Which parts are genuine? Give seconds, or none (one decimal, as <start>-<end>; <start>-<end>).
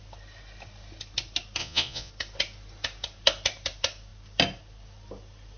0.0-1.6; 2.1-5.6